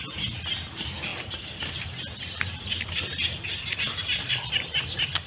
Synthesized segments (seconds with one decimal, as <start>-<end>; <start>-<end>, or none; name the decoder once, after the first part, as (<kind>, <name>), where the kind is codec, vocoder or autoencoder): none